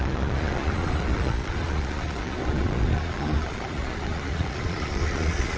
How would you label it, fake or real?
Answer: fake